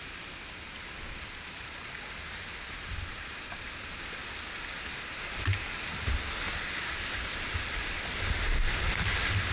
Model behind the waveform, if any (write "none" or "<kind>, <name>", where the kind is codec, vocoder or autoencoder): none